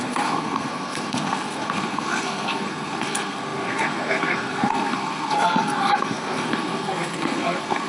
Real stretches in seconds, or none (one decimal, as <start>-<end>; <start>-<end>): none